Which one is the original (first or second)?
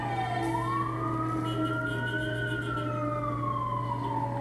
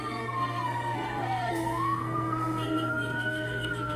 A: first